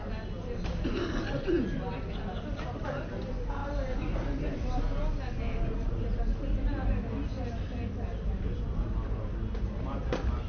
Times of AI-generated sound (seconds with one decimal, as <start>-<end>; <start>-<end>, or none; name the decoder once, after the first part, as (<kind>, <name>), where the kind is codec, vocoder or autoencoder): 3.6-4.8 (vocoder, BigVGAN v2)

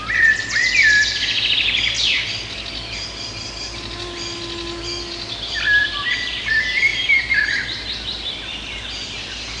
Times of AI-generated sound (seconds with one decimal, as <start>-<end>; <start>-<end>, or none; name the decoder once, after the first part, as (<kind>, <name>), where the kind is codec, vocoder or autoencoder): 5.8-6.5 (vocoder, BigVGAN v2); 6.9-7.4

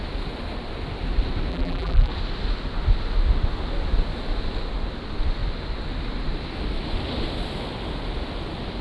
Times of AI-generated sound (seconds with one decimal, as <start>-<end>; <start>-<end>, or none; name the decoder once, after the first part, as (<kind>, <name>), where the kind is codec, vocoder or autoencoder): 1.5-2.1 (vocoder, BigVGAN v2)

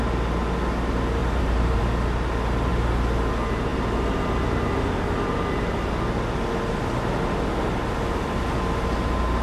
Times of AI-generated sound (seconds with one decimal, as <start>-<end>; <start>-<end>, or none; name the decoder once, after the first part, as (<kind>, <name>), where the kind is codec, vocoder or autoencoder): 1.2-1.8 (vocoder, BigVGAN v2); 3.7-5.9

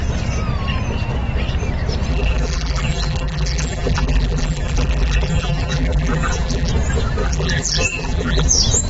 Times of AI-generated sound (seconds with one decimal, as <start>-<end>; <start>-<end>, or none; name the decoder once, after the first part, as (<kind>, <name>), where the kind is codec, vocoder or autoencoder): 2.1-6.7 (vocoder, BigVGAN v2); 7.2-8.5

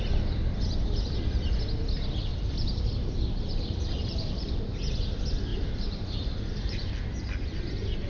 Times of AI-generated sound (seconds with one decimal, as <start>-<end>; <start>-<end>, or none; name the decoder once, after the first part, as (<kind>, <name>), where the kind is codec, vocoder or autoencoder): 2.3-4.5 (vocoder, BigVGAN v2); 5.5-6.9

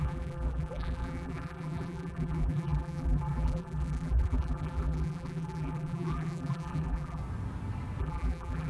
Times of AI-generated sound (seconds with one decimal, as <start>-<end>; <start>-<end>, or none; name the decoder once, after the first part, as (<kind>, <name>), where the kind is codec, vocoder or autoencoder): 0.0-7.2 (vocoder, BigVGAN v2); 8.0-8.7